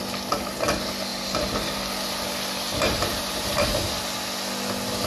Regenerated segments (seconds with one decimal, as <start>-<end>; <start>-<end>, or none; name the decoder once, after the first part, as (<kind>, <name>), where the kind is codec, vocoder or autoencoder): 1.1-1.8 (vocoder, BigVGAN v2); 2.7-4.0